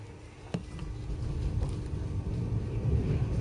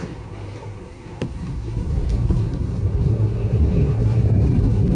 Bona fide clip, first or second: first